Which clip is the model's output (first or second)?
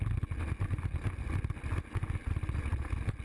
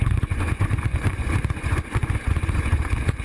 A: second